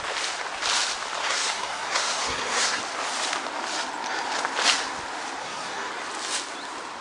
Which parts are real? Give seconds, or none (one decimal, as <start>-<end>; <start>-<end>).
0.0-1.2; 2.8-5.4; 5.9-7.0